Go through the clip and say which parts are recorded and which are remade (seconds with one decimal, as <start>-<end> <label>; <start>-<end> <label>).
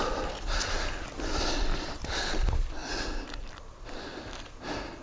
0.0-5.0 recorded